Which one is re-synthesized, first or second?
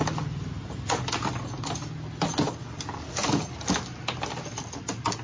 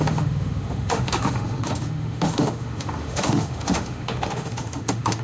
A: second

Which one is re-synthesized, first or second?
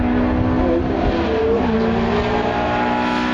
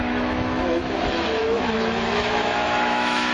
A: second